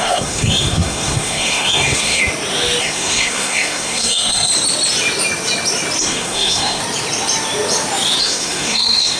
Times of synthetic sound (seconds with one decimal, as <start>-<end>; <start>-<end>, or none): 0.0-2.2; 2.8-4.5; 6.0-6.8; 8.2-9.2